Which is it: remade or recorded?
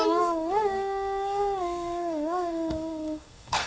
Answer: remade